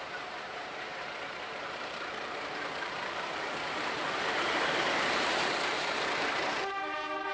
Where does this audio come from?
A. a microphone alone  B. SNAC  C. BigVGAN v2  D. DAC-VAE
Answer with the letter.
C